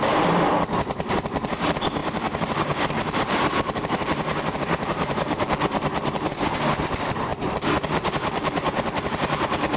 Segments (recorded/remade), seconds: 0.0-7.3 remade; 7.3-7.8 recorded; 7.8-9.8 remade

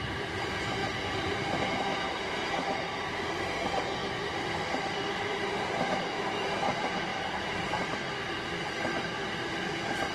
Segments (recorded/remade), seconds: 0.0-0.8 recorded; 0.8-1.6 remade; 1.6-4.0 recorded; 4.0-6.0 remade; 6.0-7.1 recorded; 7.1-8.4 remade; 8.4-10.1 recorded

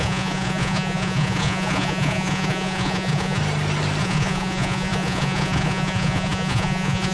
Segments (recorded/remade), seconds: 0.0-3.4 remade; 3.4-4.0 recorded; 4.0-7.1 remade

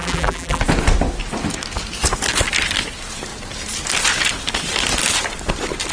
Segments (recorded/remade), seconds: 0.0-0.6 remade; 0.6-5.9 recorded

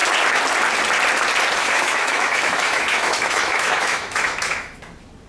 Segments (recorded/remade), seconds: 0.0-1.6 recorded; 1.6-4.8 remade; 4.8-5.3 recorded

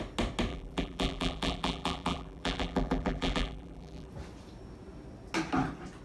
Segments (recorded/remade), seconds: 0.0-0.5 recorded; 0.5-4.1 remade; 4.1-6.0 recorded

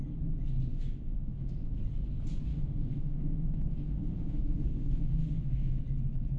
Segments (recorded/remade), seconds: 0.0-0.7 recorded; 0.7-1.8 remade; 1.8-2.5 recorded; 2.5-5.8 remade; 5.8-6.4 recorded

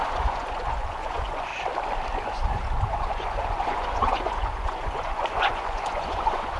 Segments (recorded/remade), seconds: 0.0-1.5 remade; 1.5-2.2 recorded; 2.2-6.6 remade